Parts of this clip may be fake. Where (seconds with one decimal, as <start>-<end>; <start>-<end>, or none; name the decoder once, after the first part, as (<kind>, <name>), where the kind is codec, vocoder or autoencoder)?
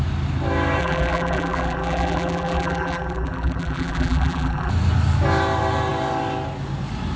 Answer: 0.8-4.7 (vocoder, BigVGAN v2)